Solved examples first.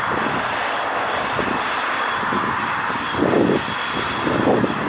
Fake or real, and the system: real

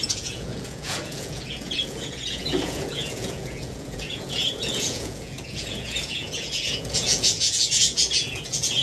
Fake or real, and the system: fake, vocoder, Vocos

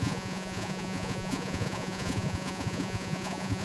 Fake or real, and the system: fake, vocoder, Vocos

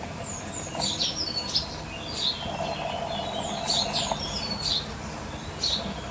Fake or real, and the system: real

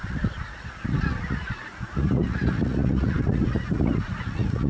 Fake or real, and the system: fake, vocoder, Vocos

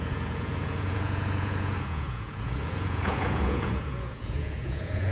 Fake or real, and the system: fake, vocoder, Vocos